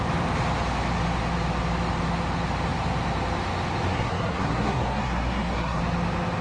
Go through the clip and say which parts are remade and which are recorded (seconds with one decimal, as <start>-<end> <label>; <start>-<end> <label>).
0.0-3.9 recorded; 3.9-5.8 remade; 5.8-6.4 recorded